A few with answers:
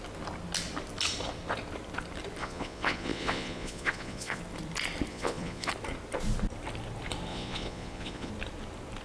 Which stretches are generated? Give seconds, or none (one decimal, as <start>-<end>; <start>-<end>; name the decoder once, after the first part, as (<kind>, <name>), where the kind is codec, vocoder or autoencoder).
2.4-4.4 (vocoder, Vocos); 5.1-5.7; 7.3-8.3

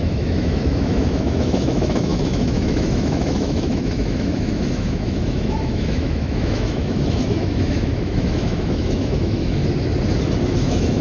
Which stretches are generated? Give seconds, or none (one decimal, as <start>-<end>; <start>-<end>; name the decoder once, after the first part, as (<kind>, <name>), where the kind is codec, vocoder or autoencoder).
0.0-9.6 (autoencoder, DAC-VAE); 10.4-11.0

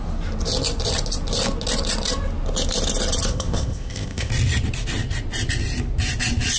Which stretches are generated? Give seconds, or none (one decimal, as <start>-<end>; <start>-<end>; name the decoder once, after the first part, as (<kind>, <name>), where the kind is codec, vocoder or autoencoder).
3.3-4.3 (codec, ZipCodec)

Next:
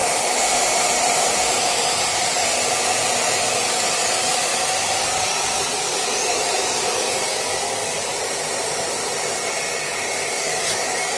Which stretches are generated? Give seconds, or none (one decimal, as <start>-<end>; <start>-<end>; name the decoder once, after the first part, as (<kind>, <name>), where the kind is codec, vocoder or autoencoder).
3.6-4.5 (codec, DAC); 5.0-8.1; 9.8-11.2